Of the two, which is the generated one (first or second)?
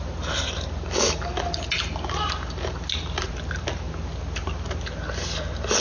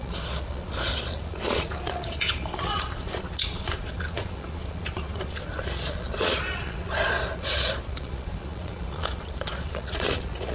second